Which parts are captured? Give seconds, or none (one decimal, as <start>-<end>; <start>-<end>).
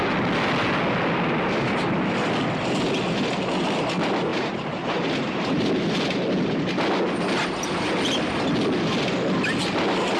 0.0-4.3; 5.7-10.2